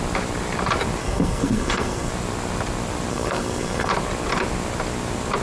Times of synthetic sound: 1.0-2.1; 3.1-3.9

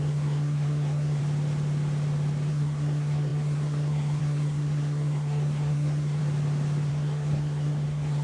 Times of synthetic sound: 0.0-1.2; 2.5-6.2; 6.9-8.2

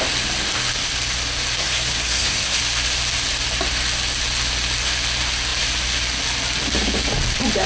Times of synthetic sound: 1.6-2.6

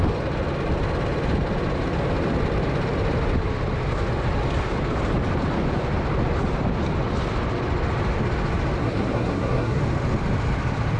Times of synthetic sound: 8.8-9.8

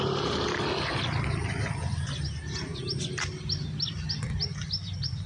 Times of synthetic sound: none

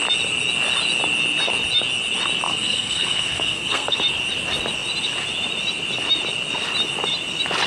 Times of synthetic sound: 2.5-4.0

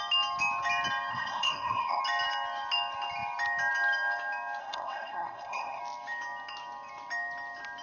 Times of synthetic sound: 1.1-2.0; 4.6-5.8